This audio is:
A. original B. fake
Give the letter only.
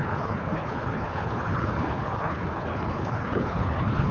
B